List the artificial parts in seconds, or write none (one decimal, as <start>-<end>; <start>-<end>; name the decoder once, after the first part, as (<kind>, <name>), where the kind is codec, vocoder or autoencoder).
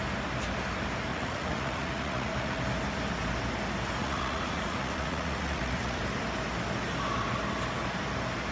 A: 1.1-2.6 (vocoder, Vocos); 4.0-6.0